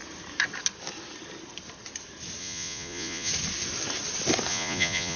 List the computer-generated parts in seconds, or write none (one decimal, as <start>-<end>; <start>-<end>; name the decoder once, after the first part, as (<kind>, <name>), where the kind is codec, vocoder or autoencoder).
2.4-3.3 (vocoder, Vocos); 4.5-5.2